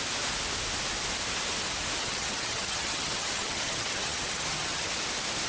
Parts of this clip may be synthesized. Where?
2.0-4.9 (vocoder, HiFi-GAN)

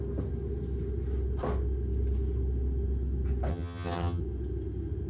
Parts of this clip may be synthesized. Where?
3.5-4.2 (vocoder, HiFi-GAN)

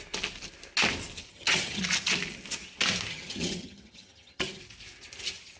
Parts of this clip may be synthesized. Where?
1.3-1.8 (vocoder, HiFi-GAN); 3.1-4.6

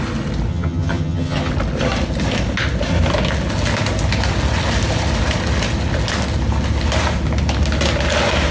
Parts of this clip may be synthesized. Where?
0.5-1.5 (vocoder, HiFi-GAN)

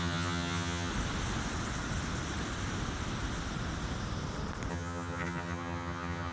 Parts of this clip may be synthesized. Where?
0.0-0.9 (vocoder, HiFi-GAN); 4.7-6.3